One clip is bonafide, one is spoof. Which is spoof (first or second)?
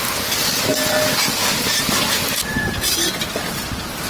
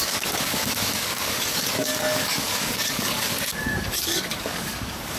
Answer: second